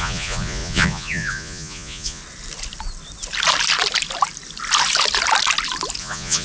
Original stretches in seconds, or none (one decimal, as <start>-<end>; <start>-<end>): 2.2-6.0